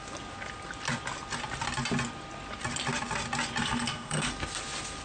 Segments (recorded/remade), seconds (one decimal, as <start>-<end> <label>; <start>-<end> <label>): 0.0-3.6 recorded; 3.6-4.3 remade; 4.3-5.0 recorded